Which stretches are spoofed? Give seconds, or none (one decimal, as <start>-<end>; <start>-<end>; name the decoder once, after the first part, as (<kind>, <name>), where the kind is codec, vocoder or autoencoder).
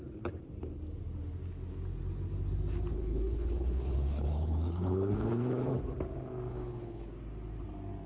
2.9-5.8 (codec, HILCodec); 6.5-7.1